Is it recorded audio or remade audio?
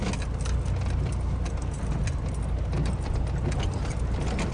recorded